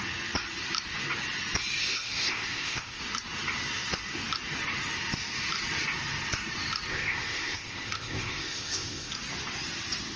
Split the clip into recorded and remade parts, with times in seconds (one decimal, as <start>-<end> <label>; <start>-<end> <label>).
0.0-1.8 recorded; 1.8-3.0 remade; 3.0-6.9 recorded; 6.9-9.1 remade; 9.1-10.2 recorded